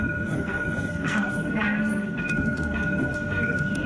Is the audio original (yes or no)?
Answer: no